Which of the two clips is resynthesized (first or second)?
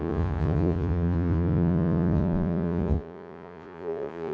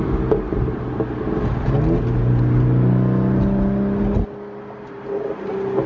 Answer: first